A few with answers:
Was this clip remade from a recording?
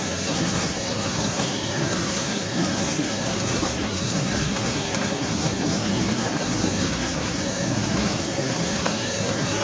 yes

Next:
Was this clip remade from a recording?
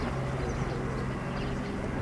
no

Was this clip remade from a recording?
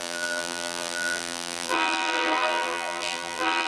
yes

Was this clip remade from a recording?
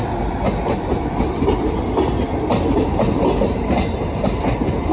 no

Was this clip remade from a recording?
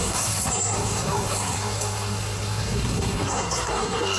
yes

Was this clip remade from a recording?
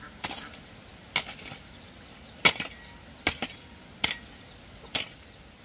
no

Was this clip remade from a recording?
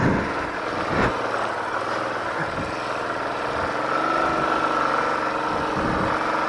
no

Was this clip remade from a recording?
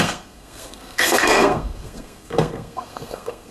yes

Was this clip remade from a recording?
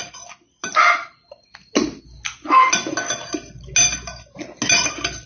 no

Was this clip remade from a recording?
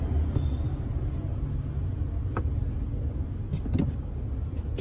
no